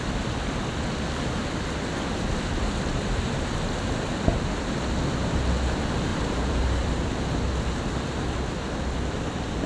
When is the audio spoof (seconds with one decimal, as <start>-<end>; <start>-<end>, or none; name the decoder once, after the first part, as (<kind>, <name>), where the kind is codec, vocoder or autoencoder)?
6.1-7.4 (vocoder, BigVGAN v2)